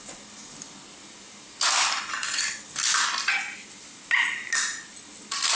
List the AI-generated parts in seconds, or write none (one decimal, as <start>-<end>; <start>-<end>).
none